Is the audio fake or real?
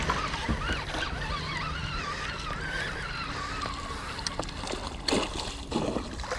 real